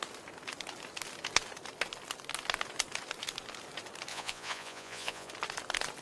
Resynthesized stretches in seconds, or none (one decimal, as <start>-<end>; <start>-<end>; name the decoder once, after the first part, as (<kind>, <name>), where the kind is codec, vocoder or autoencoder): 4.1-5.3 (vocoder, Vocos)